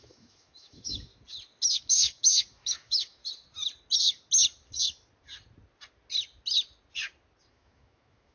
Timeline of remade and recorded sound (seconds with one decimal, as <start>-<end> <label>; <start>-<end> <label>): 0.0-1.1 remade; 1.1-1.8 recorded; 1.8-3.2 remade; 3.2-7.5 recorded; 7.5-8.3 remade